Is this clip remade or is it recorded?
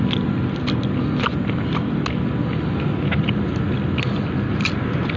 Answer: recorded